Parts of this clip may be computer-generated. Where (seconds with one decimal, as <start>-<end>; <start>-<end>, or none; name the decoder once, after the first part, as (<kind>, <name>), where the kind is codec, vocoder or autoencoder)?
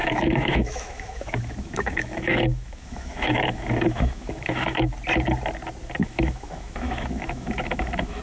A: 0.0-4.9 (autoencoder, DAC-VAE); 6.0-8.2